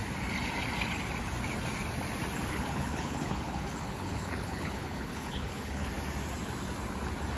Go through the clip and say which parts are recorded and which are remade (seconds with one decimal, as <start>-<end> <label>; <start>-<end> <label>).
0.0-2.5 recorded; 2.5-5.9 remade; 5.9-7.4 recorded